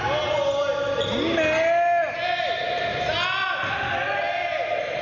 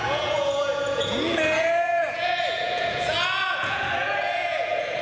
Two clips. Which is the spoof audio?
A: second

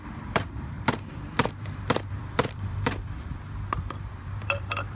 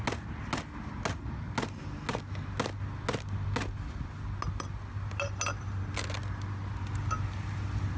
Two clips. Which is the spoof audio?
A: first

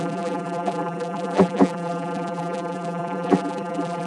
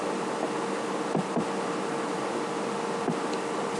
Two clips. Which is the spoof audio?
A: first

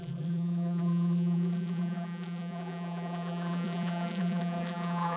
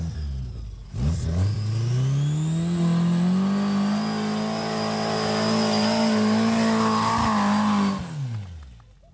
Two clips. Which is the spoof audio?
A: first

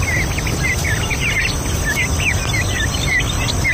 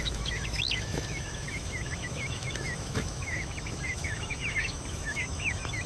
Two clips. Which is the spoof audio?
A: second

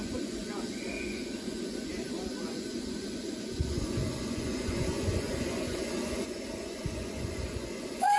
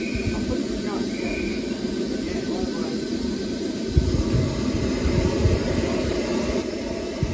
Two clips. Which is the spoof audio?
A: first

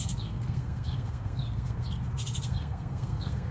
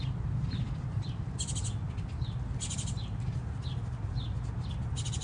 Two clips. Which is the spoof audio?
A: first